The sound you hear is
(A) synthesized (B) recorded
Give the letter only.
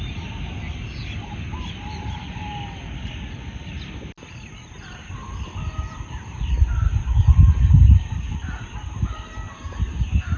B